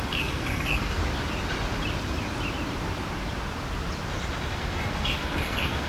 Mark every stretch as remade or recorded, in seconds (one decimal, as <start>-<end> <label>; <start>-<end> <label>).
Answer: 0.0-1.0 remade; 1.0-4.5 recorded; 4.5-5.9 remade